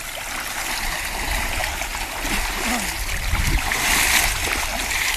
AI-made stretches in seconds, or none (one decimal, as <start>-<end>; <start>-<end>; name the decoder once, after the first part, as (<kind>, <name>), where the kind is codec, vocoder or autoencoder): none